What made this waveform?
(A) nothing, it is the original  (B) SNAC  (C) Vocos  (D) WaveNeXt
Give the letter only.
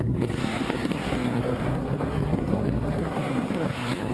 B